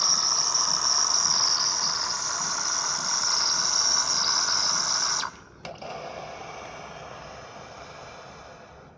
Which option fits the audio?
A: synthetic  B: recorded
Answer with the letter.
B